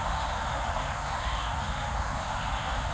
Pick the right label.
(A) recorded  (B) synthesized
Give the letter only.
B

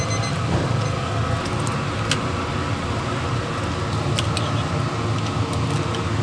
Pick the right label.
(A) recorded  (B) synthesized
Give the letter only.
A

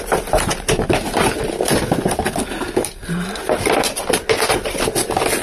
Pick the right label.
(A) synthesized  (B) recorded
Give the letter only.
B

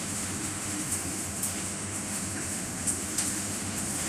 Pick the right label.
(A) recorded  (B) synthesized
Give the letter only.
B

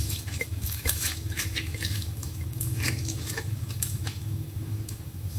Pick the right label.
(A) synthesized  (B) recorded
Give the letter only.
A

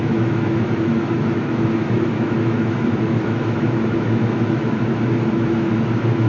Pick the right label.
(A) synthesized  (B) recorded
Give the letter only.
A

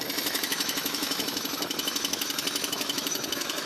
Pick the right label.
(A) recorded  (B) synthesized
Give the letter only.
B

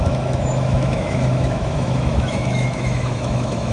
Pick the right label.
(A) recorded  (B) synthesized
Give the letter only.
B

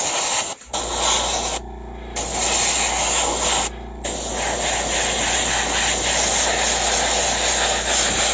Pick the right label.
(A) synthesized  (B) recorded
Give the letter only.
B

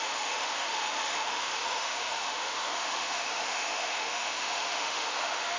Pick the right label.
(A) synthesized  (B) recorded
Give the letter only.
A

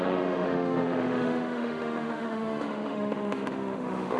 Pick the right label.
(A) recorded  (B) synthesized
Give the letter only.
B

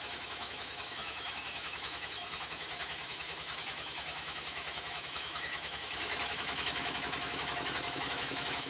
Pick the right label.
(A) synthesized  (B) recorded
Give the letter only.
A